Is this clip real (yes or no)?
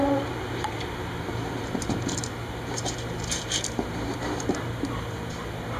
no